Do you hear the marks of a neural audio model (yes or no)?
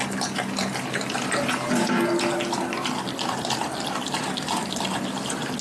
no